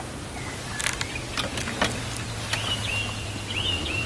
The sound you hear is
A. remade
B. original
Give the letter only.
B